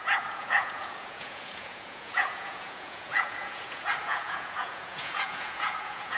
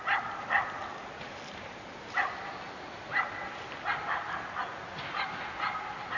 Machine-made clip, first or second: first